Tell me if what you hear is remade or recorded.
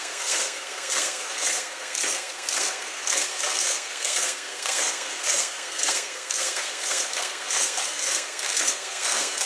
remade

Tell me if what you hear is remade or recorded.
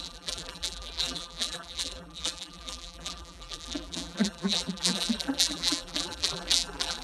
remade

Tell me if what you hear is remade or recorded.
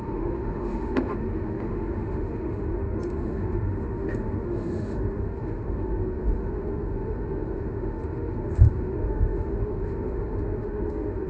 remade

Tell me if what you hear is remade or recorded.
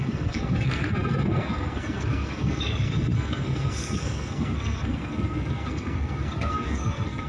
remade